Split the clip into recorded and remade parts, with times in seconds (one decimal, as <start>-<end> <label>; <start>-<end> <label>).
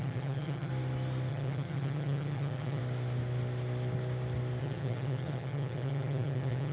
0.0-0.7 remade; 0.7-1.3 recorded; 1.3-2.8 remade; 2.8-4.6 recorded; 4.6-6.7 remade